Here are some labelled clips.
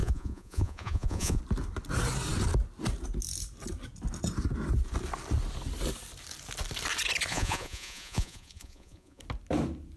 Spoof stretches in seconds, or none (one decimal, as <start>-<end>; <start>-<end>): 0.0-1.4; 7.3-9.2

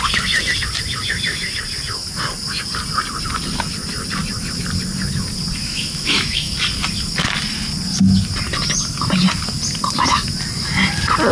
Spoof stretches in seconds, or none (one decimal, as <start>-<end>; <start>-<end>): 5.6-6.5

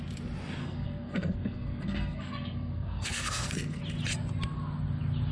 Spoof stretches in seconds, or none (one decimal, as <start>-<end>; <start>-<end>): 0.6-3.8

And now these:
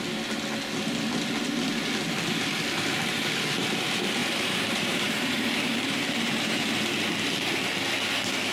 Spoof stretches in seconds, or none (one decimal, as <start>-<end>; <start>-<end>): 4.2-6.7

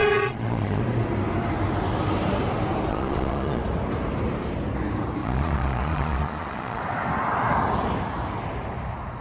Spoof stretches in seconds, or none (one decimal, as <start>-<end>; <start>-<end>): 0.0-0.8; 2.9-3.6; 5.2-6.8